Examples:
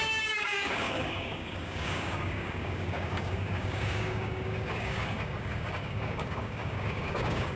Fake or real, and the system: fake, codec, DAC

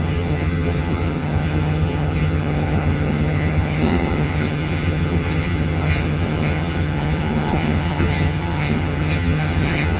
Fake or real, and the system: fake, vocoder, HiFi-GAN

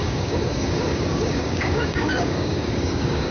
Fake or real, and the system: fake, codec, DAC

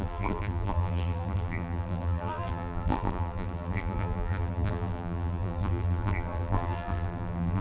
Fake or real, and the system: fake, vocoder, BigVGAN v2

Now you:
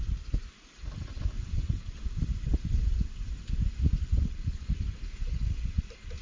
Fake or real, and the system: fake, vocoder, BigVGAN v2